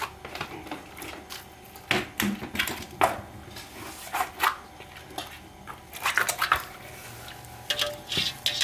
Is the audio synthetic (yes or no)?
no